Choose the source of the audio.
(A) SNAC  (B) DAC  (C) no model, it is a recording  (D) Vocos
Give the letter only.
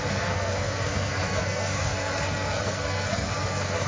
A